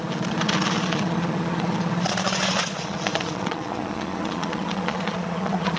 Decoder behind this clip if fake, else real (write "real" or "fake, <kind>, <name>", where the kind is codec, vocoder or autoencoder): fake, vocoder, Vocos